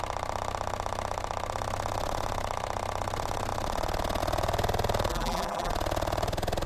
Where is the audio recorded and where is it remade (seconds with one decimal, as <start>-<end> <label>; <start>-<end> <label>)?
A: 0.0-5.1 recorded; 5.1-5.7 remade; 5.7-6.7 recorded